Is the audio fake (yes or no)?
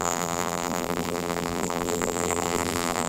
yes